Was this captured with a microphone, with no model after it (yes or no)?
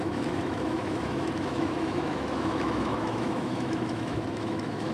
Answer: no